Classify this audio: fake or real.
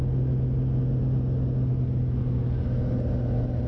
real